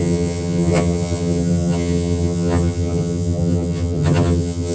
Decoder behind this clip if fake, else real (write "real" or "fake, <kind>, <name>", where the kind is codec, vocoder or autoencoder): fake, vocoder, HiFi-GAN